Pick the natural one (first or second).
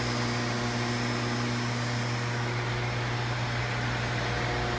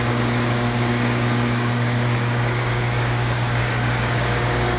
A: first